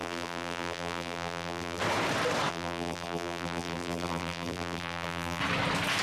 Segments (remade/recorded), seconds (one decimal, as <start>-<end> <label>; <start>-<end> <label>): 0.0-1.8 remade; 1.8-2.5 recorded; 2.5-5.4 remade; 5.4-6.0 recorded